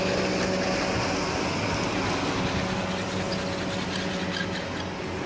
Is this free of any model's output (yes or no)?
yes